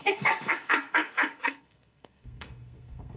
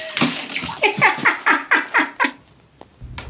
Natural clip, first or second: second